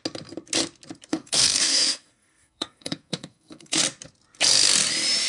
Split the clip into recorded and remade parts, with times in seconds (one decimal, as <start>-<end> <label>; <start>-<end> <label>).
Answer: 0.0-1.1 recorded; 1.1-3.8 remade; 3.8-5.3 recorded